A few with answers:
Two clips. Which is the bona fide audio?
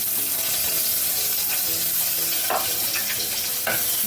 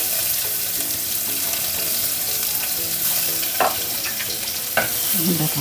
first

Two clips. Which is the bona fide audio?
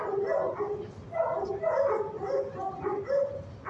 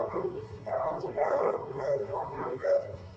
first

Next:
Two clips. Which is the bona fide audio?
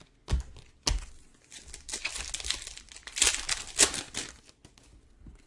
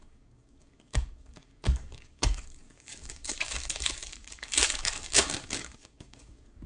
first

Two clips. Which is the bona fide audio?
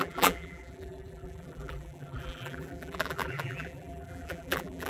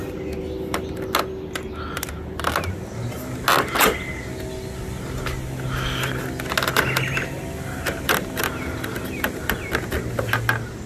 second